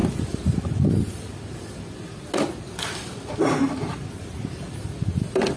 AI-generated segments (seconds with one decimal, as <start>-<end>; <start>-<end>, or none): none